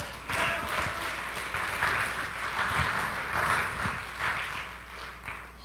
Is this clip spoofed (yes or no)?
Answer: no